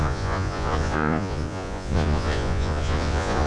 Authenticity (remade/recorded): remade